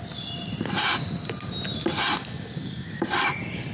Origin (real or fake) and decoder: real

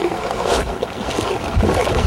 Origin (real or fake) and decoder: fake, codec, SNAC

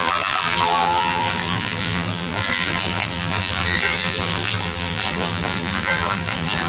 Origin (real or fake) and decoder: fake, vocoder, BigVGAN v2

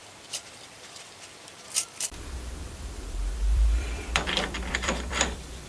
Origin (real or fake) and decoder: fake, vocoder, BigVGAN v2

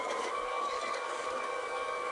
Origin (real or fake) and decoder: fake, codec, DAC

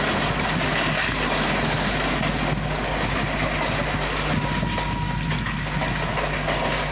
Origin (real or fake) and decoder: real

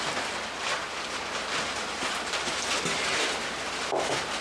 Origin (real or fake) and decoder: real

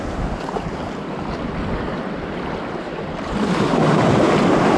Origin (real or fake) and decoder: real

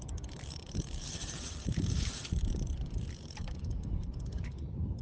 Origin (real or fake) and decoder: fake, vocoder, BigVGAN v2